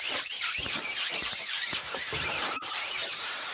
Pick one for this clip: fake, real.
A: fake